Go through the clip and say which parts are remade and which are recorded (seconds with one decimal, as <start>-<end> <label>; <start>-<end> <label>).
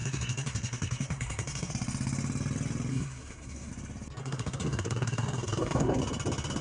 0.0-1.7 remade; 1.7-2.9 recorded; 2.9-3.7 remade; 3.7-4.2 recorded; 4.2-6.0 remade; 6.0-6.6 recorded